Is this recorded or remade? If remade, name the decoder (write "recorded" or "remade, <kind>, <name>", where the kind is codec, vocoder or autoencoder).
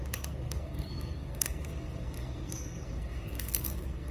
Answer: remade, codec, SNAC